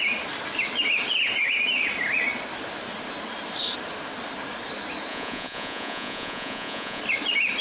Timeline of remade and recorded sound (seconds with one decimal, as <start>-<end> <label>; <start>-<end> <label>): 0.0-5.1 recorded; 5.1-7.0 remade; 7.0-7.6 recorded